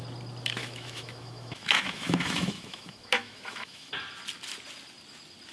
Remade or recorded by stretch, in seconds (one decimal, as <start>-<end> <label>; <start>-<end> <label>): 0.0-0.6 recorded; 0.6-3.9 remade; 3.9-5.5 recorded